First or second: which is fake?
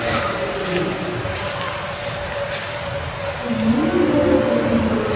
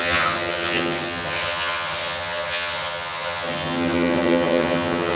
second